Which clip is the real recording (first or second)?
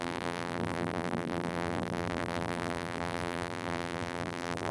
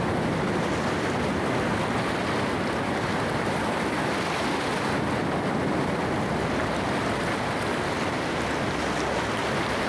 second